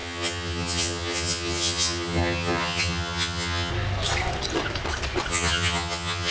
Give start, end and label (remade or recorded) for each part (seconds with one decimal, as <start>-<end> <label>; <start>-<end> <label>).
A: 0.0-3.7 remade; 3.7-5.3 recorded; 5.3-6.3 remade

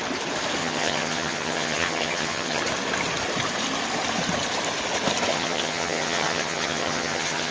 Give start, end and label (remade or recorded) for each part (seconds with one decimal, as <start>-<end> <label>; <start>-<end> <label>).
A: 0.0-0.6 recorded; 0.6-2.6 remade; 2.6-5.3 recorded; 5.3-7.5 remade

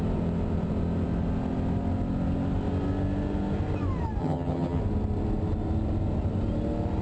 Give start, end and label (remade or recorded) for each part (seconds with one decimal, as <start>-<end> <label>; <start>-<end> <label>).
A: 0.0-4.2 recorded; 4.2-4.8 remade; 4.8-7.0 recorded